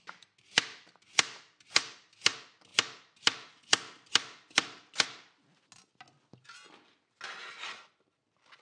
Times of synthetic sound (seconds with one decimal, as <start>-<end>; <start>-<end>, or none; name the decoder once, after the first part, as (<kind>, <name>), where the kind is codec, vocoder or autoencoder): none